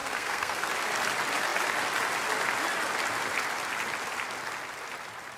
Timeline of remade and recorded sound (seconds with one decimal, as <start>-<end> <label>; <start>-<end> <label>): 0.0-0.7 remade; 0.7-5.4 recorded